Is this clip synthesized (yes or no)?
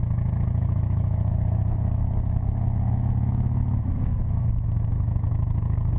yes